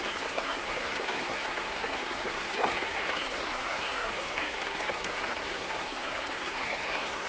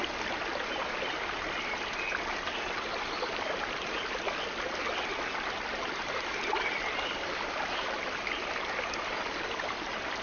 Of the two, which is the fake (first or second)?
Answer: first